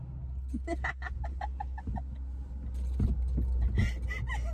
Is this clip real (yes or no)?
yes